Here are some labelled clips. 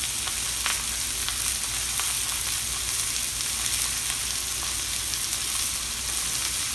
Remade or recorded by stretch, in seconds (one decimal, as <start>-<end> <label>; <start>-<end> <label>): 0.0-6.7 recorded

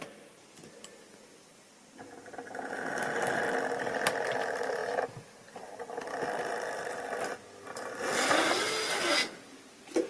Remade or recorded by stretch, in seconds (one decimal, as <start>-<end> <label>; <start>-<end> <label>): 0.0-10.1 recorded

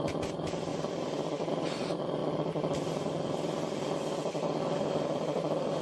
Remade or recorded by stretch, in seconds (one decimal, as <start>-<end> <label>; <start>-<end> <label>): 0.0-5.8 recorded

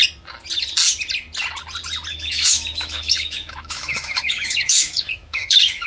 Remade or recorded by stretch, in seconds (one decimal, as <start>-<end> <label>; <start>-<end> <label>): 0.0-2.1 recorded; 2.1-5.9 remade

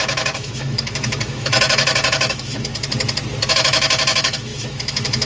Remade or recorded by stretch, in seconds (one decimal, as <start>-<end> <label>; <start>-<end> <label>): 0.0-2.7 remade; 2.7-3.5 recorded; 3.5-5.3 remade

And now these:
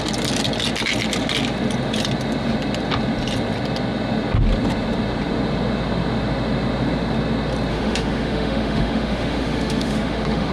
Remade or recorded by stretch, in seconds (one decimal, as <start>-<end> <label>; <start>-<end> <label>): 0.0-7.7 recorded; 7.7-10.5 remade

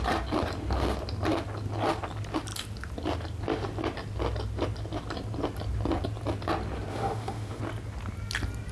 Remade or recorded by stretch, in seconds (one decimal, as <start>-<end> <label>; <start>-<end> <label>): 0.0-6.9 recorded; 6.9-7.6 remade; 7.6-8.7 recorded